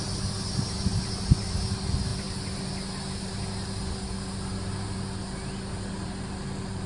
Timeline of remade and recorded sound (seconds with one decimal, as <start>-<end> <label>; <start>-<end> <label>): 0.0-6.9 recorded

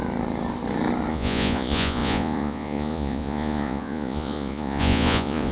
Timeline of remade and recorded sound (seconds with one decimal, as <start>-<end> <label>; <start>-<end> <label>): 0.0-1.1 recorded; 1.1-5.5 remade